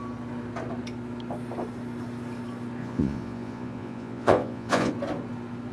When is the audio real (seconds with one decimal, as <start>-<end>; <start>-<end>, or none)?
0.0-2.8; 4.9-5.7

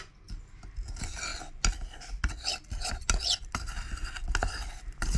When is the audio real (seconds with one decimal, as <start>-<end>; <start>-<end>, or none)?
0.0-5.2

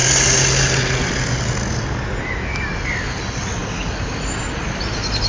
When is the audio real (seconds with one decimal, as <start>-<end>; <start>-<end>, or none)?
0.0-5.3